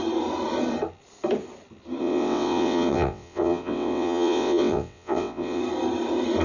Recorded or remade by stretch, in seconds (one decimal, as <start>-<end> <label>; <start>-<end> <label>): 0.0-2.0 recorded; 2.0-5.6 remade; 5.6-6.4 recorded

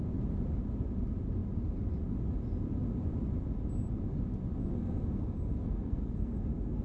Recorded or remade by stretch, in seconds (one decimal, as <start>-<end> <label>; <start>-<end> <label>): 0.0-4.6 recorded; 4.6-6.8 remade

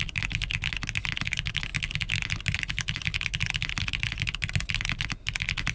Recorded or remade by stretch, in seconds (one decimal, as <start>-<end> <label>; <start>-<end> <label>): 0.0-5.7 recorded

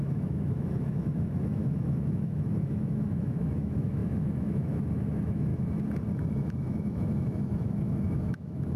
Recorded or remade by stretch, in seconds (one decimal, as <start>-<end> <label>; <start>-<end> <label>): 0.0-5.5 remade; 5.5-6.3 recorded; 6.3-8.8 remade